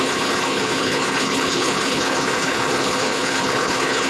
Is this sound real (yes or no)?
no